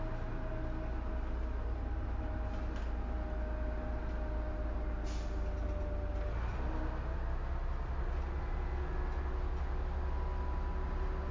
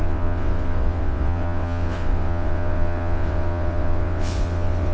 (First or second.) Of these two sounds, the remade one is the second